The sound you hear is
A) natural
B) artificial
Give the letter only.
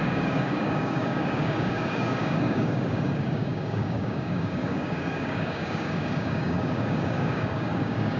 B